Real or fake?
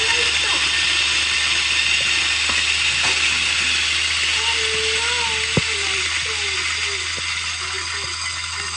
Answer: real